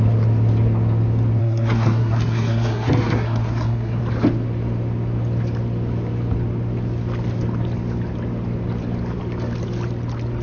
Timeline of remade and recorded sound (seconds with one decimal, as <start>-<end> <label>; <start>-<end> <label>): 0.0-1.4 recorded; 1.4-4.0 remade; 4.0-10.4 recorded